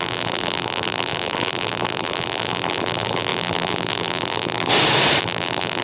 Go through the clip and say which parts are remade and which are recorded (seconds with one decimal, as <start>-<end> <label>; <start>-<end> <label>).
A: 0.0-4.7 remade; 4.7-5.2 recorded; 5.2-5.8 remade